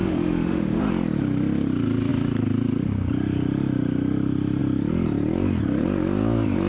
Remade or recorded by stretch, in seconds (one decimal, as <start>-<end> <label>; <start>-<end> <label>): 0.0-0.9 remade; 0.9-6.7 recorded